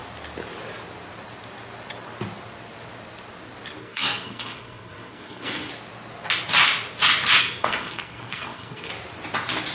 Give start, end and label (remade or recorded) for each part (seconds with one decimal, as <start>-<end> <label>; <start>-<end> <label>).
0.0-3.8 recorded; 3.8-5.7 remade; 5.7-7.4 recorded; 7.4-8.9 remade; 8.9-9.7 recorded